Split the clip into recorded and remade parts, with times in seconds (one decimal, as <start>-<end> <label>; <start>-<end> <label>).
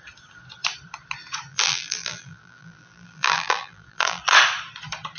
0.0-1.5 recorded; 1.5-4.2 remade; 4.2-5.2 recorded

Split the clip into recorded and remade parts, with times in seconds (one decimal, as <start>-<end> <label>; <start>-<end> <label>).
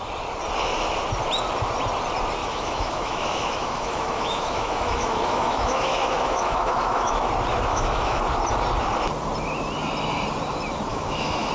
0.0-2.4 recorded; 2.4-7.3 remade; 7.3-7.7 recorded; 7.7-8.2 remade; 8.2-10.9 recorded; 10.9-11.5 remade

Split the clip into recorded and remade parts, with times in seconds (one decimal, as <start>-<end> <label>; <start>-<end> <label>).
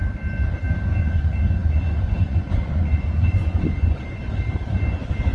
0.0-1.0 recorded; 1.0-4.2 remade; 4.2-5.3 recorded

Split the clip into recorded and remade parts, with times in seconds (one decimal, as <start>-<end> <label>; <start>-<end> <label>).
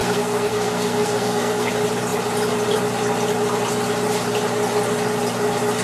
0.0-1.7 remade; 1.7-5.8 recorded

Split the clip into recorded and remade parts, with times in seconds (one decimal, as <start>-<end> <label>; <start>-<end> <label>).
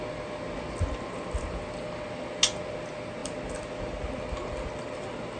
0.0-5.4 recorded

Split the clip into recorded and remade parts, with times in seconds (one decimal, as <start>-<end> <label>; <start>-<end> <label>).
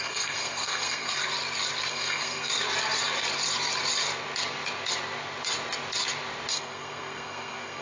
0.0-1.2 remade; 1.2-1.9 recorded; 1.9-2.5 remade; 2.5-6.5 recorded; 6.5-7.8 remade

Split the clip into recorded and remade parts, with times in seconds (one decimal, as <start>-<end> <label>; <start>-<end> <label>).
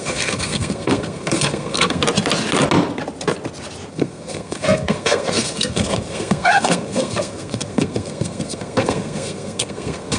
0.0-2.0 remade; 2.0-3.9 recorded; 3.9-10.2 remade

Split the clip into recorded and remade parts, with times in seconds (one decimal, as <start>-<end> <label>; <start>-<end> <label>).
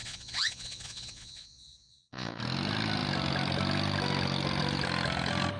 0.0-2.4 remade; 2.4-5.6 recorded